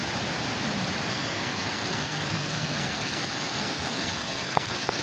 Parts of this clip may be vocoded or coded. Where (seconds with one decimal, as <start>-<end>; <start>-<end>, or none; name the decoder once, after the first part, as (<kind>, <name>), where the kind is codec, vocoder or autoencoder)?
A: 1.1-5.0 (codec, SNAC)